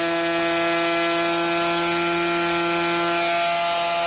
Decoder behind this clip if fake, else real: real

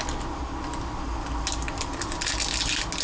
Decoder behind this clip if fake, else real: real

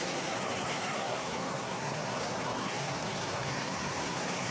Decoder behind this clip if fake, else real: fake, codec, SNAC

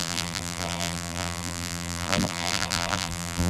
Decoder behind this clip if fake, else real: fake, vocoder, BigVGAN v2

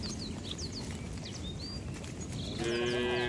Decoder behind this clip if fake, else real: real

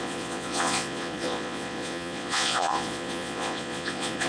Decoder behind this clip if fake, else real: fake, vocoder, Vocos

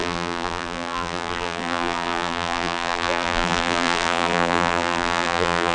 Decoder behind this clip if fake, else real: fake, vocoder, BigVGAN v2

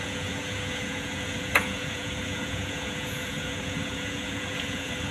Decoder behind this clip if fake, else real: fake, vocoder, Vocos